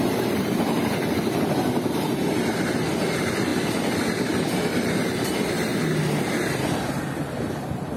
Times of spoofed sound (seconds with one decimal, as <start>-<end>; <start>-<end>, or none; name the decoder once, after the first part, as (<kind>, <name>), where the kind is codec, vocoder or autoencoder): 0.0-5.7 (vocoder, BigVGAN v2); 6.9-8.0